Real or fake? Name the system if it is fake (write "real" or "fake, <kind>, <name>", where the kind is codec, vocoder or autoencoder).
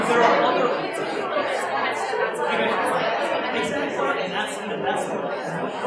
real